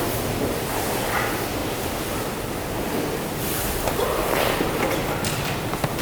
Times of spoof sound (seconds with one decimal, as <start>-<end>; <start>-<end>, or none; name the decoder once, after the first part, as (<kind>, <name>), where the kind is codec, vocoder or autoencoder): none

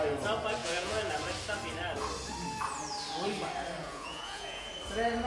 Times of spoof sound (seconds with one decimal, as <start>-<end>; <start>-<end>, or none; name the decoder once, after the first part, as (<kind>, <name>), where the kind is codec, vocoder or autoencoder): 0.6-1.1 (vocoder, Vocos); 3.8-4.7

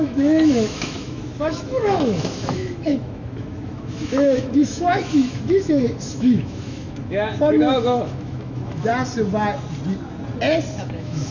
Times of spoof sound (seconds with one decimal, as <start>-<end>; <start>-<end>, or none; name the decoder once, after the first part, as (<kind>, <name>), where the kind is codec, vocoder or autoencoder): 0.0-8.9 (autoencoder, DAC-VAE); 10.9-11.3

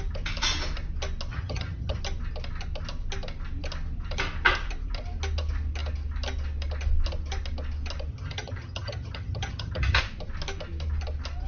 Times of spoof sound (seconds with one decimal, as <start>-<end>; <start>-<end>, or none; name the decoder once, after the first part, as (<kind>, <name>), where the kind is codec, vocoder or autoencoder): 1.3-2.0 (vocoder, HiFi-GAN); 8.1-10.0

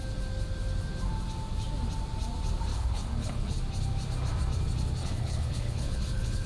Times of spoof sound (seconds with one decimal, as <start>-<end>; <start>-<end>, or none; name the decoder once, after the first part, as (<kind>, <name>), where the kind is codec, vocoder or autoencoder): 2.7-3.6 (codec, HILCodec); 5.0-6.5

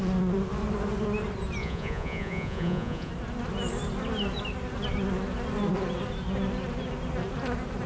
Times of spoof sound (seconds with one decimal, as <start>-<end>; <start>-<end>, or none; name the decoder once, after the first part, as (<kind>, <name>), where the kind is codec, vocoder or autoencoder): 1.6-3.1 (vocoder, Vocos)

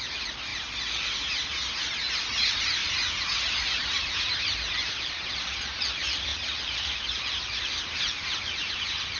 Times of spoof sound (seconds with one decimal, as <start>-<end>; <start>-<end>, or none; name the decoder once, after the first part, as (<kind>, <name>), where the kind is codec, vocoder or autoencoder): 2.8-4.1 (vocoder, BigVGAN v2)

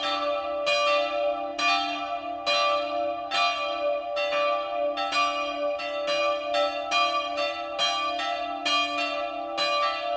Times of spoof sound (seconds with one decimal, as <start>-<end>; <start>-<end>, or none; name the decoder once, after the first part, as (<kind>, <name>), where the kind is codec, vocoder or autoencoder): none